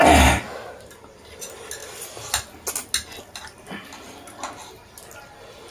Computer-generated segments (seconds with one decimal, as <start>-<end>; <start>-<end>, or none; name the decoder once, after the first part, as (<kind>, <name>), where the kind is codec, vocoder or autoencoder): none